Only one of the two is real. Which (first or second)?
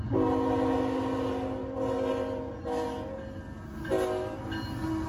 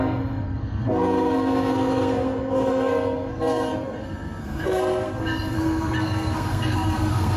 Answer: first